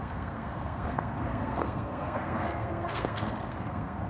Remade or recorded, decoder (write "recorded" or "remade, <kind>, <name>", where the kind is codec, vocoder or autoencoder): remade, codec, SNAC